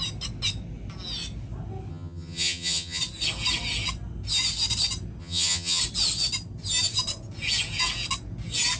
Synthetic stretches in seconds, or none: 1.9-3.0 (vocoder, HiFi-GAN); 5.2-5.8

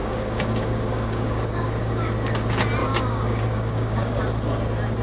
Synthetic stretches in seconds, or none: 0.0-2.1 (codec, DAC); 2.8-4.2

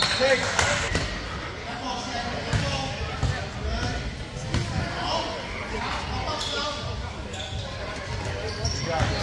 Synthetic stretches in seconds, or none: none

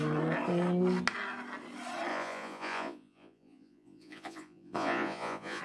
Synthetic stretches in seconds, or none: 2.1-5.6 (vocoder, Vocos)

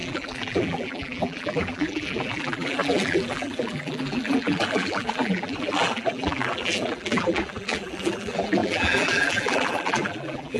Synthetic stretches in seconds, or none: 0.0-10.6 (vocoder, BigVGAN v2)

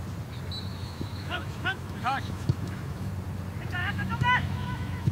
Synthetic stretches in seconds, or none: 0.7-3.1 (autoencoder, DAC-VAE); 3.8-5.1

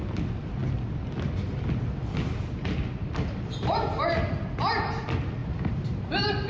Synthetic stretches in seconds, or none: 3.0-4.2 (vocoder, BigVGAN v2); 5.4-6.5